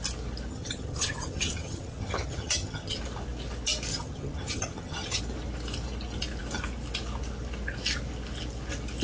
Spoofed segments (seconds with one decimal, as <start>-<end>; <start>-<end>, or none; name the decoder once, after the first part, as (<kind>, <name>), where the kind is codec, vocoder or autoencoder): 0.5-3.0 (vocoder, HiFi-GAN); 3.9-5.2